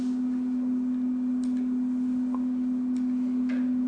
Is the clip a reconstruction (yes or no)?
no